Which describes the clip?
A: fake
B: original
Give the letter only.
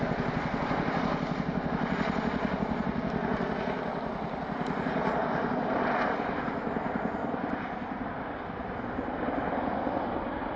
B